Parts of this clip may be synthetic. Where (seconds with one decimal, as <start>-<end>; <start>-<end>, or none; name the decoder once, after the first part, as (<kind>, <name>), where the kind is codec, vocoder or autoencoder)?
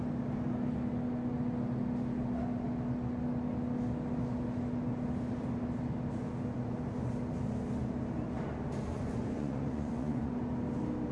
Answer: 8.9-10.3 (vocoder, Vocos)